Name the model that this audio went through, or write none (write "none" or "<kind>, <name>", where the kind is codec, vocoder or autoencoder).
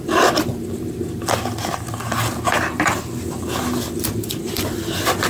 vocoder, BigVGAN v2